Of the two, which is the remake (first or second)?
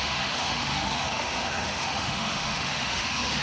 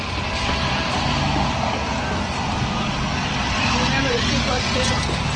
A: first